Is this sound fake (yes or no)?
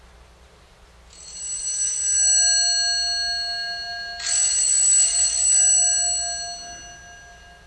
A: no